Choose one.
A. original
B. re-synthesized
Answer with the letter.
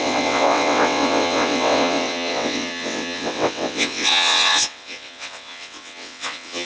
B